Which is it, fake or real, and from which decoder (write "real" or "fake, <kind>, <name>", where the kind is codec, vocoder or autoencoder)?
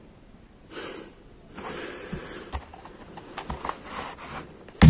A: real